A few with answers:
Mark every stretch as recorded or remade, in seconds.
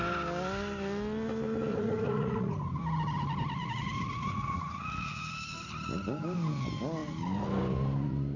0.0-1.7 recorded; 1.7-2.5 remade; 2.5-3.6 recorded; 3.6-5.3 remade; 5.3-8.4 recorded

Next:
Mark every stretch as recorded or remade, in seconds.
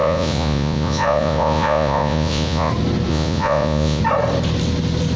0.0-2.7 remade; 2.7-3.1 recorded; 3.1-4.0 remade; 4.0-5.2 recorded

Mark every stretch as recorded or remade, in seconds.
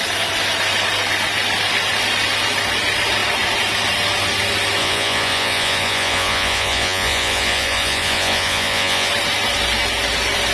0.0-4.8 recorded; 4.8-9.1 remade; 9.1-10.5 recorded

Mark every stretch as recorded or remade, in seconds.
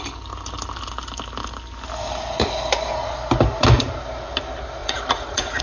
0.0-4.8 recorded; 4.8-5.6 remade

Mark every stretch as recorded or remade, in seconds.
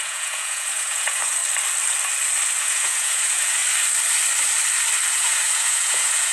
0.0-1.4 remade; 1.4-2.6 recorded; 2.6-3.6 remade; 3.6-5.1 recorded; 5.1-6.3 remade